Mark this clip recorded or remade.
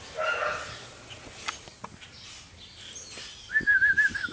recorded